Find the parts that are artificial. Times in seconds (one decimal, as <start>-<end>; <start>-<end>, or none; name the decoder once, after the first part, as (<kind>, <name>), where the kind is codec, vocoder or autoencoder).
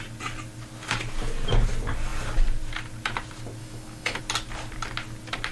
3.6-4.2 (autoencoder, DAC-VAE)